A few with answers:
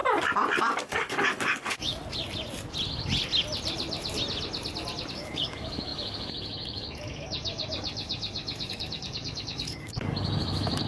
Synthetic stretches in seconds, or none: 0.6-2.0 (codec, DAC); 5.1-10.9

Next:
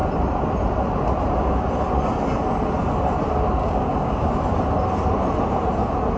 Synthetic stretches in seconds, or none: 3.6-4.3 (codec, DAC)

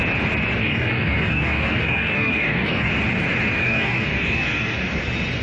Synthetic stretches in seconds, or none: 0.6-2.9 (codec, DAC); 3.6-5.0

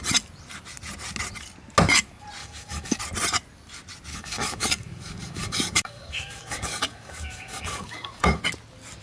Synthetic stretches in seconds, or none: 2.4-3.0 (codec, DAC); 4.1-8.4